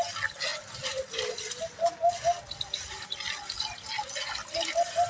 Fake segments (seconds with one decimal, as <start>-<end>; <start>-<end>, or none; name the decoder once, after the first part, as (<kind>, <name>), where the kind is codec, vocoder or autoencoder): none